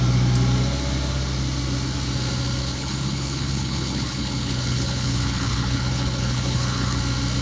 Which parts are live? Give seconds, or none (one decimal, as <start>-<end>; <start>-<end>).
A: 0.0-2.6; 7.0-7.4

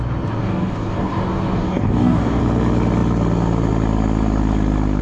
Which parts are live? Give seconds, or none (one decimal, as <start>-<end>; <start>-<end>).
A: 0.0-0.4; 2.4-5.0